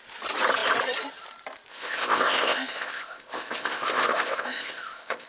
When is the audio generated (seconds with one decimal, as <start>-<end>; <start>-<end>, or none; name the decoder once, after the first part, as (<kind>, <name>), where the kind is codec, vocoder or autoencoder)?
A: 1.7-5.3 (codec, ZipCodec)